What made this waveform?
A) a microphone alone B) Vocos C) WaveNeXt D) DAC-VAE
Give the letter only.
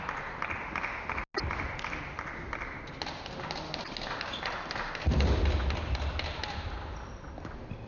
A